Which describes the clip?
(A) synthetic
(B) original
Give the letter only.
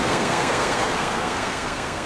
A